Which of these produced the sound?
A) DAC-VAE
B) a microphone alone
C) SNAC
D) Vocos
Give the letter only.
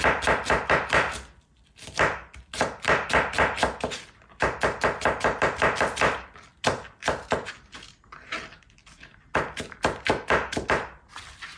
B